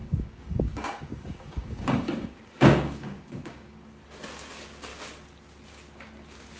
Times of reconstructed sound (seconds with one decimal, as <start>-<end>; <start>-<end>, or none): 0.0-4.0

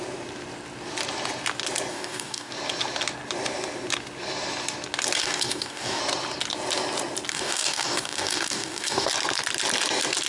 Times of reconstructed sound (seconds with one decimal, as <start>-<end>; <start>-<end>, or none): 1.9-2.5; 5.2-6.0; 7.3-9.1

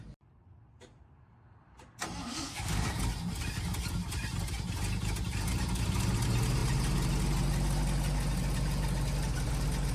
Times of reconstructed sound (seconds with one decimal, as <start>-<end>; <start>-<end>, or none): 2.3-3.0